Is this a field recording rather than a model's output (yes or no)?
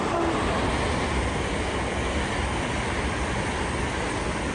yes